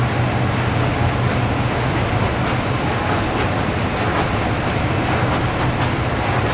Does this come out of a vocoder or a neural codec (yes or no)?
no